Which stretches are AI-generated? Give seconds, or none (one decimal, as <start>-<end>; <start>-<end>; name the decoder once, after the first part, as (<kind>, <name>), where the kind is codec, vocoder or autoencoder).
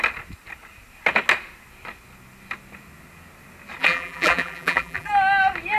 3.8-5.1 (vocoder, BigVGAN v2)